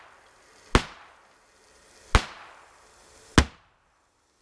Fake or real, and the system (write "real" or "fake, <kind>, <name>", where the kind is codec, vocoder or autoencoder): real